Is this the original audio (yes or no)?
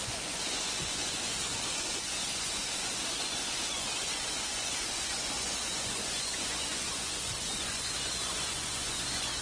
no